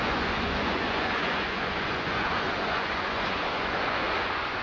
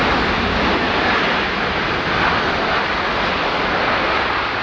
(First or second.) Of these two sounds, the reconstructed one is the first